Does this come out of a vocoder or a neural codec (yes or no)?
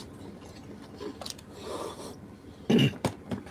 no